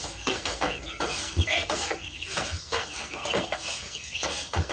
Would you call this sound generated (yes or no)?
yes